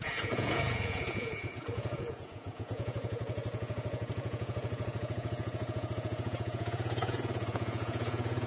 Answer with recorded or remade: remade